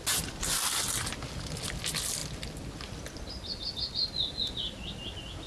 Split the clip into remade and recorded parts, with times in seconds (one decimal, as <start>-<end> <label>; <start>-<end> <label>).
0.0-5.5 recorded